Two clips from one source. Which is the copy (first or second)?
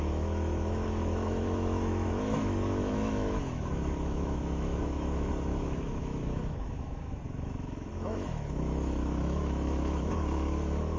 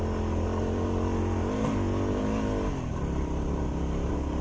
first